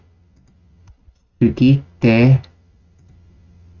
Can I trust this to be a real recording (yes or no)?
yes